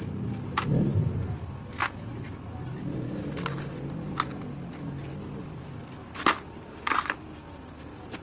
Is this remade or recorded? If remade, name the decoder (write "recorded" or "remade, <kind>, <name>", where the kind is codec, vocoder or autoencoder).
recorded